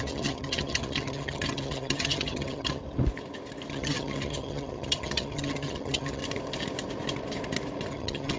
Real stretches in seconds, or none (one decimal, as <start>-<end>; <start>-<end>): 2.8-3.7; 6.2-7.9